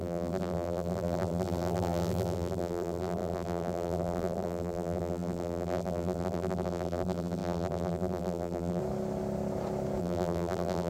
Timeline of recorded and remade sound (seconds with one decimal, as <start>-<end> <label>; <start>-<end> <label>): 0.0-8.8 remade; 8.8-10.0 recorded; 10.0-10.9 remade